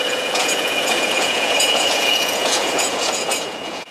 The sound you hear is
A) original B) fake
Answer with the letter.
B